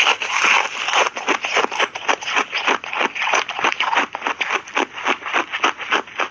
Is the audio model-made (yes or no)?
no